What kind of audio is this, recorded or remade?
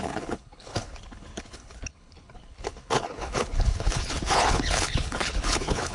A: remade